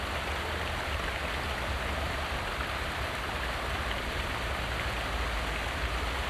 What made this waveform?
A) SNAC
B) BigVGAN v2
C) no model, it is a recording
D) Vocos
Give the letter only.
C